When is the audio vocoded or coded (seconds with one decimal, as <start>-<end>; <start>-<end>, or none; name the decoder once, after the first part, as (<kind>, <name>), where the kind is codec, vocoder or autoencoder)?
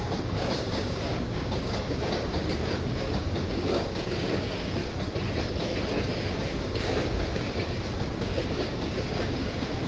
0.0-4.8 (codec, DAC); 6.5-9.9